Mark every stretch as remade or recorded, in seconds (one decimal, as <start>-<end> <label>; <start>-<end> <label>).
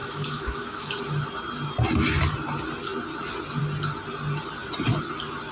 0.0-1.0 remade; 1.0-5.5 recorded